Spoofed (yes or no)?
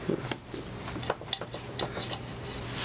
no